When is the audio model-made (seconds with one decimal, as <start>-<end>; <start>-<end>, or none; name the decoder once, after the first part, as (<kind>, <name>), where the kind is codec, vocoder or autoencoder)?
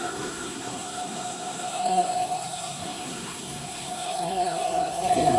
0.0-5.4 (codec, SNAC)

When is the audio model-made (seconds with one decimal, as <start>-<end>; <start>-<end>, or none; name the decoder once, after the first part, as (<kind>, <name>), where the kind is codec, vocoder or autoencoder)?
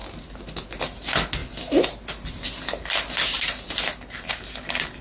none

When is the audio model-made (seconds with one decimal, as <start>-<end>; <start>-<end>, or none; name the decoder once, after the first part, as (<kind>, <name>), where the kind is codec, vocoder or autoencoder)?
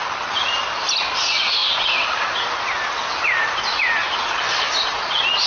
none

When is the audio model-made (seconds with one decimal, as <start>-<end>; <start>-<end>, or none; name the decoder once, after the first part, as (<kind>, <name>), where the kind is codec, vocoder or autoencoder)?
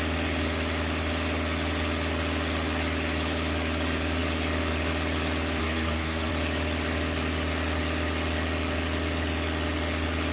5.6-6.3 (codec, SNAC)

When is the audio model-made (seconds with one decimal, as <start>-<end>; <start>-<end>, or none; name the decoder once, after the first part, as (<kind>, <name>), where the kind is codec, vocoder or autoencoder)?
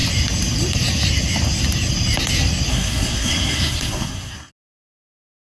2.7-4.5 (codec, SNAC)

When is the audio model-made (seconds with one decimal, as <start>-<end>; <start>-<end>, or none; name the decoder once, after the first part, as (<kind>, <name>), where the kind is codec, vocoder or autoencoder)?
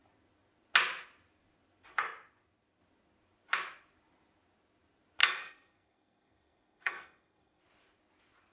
5.2-7.6 (codec, SNAC)